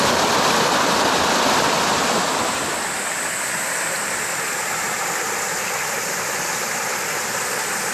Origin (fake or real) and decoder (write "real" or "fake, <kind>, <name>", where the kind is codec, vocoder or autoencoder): real